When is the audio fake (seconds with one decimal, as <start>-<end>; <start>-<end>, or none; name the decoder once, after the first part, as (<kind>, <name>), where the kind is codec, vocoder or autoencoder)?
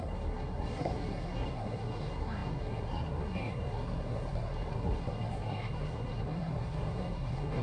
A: 0.0-7.6 (codec, SNAC)